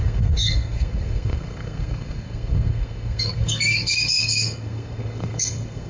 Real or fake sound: fake